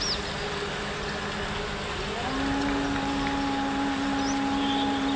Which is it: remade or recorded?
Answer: recorded